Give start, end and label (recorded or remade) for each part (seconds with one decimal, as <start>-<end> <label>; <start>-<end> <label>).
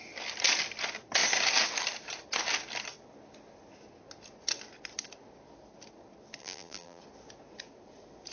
0.0-6.4 recorded; 6.4-7.0 remade; 7.0-8.3 recorded